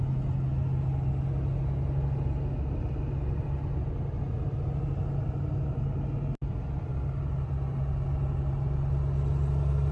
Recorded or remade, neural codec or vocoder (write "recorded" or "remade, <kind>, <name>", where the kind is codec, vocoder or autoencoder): recorded